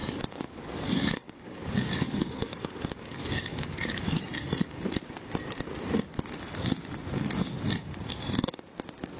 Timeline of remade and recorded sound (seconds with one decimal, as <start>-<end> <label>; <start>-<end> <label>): 0.0-4.2 remade; 4.2-9.2 recorded